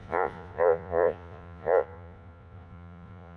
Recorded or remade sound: remade